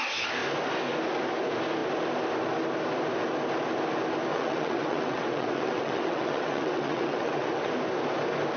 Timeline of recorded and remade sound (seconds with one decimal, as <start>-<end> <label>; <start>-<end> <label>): 0.0-4.3 recorded; 4.3-7.7 remade; 7.7-8.6 recorded